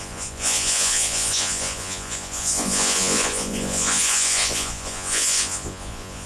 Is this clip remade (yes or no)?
yes